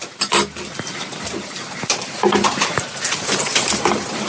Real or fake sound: real